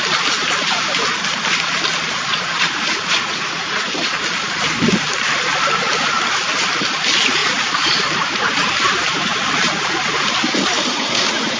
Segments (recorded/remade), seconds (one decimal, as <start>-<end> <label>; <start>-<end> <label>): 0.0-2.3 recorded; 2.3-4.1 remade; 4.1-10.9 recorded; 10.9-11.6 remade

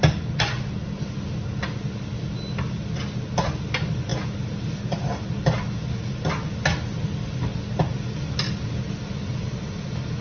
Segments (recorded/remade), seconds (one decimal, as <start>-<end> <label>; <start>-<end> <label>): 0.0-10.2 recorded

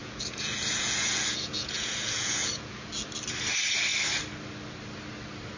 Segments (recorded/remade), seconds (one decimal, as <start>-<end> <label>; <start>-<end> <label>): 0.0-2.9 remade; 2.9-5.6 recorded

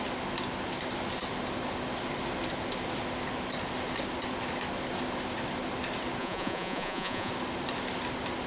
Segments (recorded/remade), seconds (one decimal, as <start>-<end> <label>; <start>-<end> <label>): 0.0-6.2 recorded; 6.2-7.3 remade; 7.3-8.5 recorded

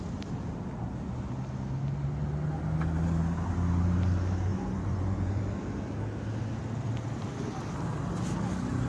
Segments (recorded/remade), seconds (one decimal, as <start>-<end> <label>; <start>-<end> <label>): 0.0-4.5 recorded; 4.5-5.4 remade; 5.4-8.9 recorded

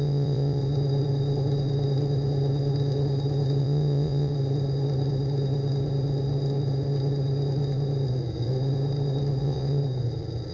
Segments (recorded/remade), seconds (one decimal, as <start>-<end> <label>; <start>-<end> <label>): 0.0-0.6 remade; 0.6-3.6 recorded; 3.6-4.3 remade; 4.3-9.4 recorded; 9.4-9.8 remade; 9.8-10.5 recorded